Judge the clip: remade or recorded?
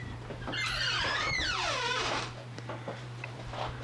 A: remade